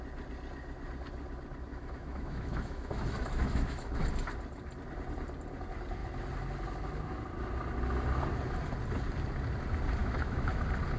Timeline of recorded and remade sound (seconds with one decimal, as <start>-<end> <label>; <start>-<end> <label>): 0.0-1.7 recorded; 1.7-4.0 remade; 4.0-10.0 recorded; 10.0-10.6 remade; 10.6-11.0 recorded